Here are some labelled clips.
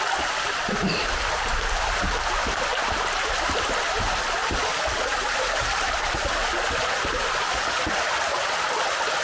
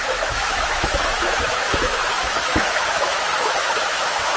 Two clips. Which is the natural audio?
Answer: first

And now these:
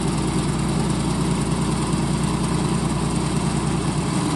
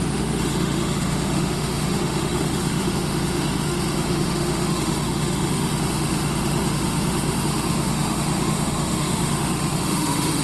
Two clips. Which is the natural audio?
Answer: first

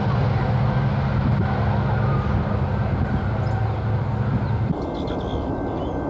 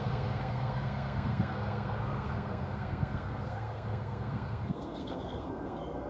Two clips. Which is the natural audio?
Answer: first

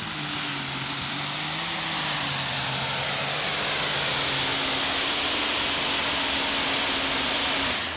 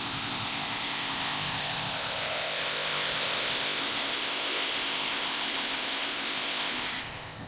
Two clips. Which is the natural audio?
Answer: first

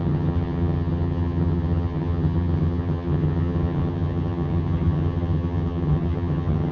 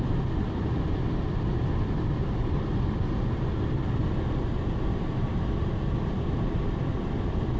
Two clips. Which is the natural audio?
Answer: second